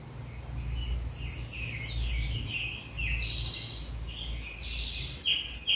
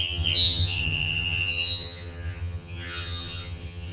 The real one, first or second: first